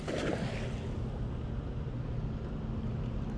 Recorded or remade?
recorded